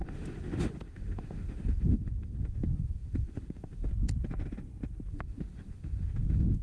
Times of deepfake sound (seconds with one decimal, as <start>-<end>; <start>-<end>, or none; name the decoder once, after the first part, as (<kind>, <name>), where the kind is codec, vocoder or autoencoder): 0.0-3.9 (autoencoder, DAC-VAE); 5.1-6.6